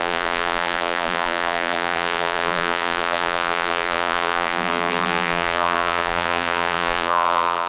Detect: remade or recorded remade